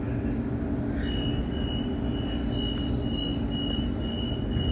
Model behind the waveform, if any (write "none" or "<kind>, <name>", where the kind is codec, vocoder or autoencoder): none